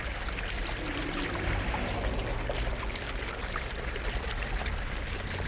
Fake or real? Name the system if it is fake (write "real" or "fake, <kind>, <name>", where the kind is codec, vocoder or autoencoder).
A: real